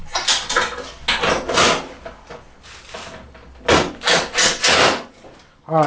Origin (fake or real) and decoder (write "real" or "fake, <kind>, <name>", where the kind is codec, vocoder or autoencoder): real